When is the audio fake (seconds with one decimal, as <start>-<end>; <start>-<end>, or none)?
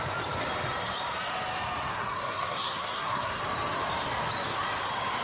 1.9-3.4